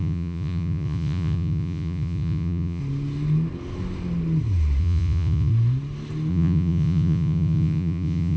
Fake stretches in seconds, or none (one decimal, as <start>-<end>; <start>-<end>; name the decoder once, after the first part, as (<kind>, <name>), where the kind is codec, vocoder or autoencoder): 0.0-2.8 (vocoder, Vocos); 4.8-5.5; 6.3-8.4